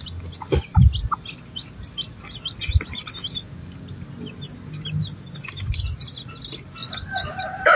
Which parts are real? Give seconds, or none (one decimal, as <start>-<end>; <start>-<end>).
0.0-6.8